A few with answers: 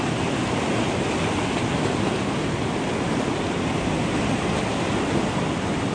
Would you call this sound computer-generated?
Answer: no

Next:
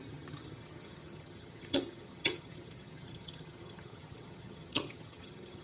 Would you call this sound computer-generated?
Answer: yes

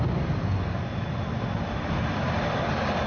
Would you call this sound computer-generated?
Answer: no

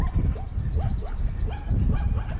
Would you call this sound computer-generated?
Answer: no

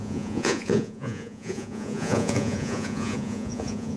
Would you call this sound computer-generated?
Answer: yes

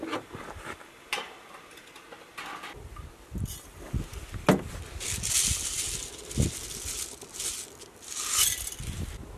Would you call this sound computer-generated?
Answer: no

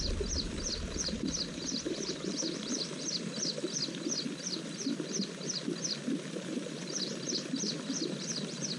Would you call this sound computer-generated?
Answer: yes